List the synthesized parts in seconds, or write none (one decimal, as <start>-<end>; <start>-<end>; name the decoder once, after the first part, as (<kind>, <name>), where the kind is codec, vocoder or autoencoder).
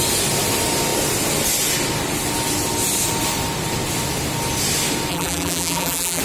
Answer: 5.1-6.2 (vocoder, BigVGAN v2)